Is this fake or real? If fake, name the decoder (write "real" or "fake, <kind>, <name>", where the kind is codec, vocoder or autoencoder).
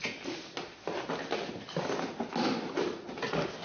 real